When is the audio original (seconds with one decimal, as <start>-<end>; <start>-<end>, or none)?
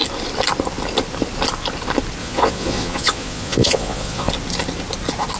0.0-2.2; 4.3-5.4